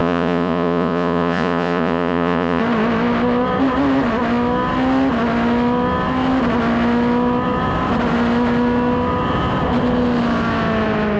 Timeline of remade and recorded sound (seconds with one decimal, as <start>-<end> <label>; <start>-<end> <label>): 0.0-2.6 remade; 2.6-11.2 recorded